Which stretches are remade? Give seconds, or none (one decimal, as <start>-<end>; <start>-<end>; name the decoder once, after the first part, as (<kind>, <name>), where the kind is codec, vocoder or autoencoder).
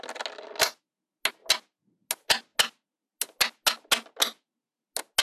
none